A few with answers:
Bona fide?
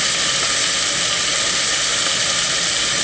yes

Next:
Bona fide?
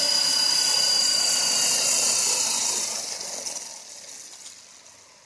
yes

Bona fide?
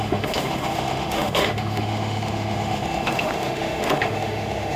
no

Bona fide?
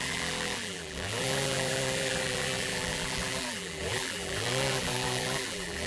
no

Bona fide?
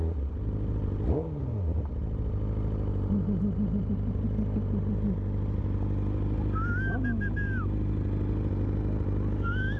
yes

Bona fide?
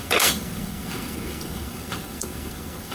no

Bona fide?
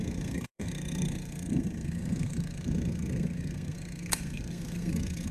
no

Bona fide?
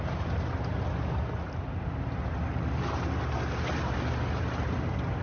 yes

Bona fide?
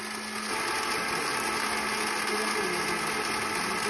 yes